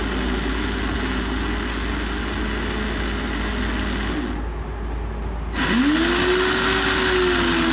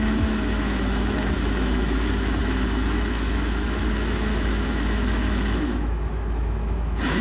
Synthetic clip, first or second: second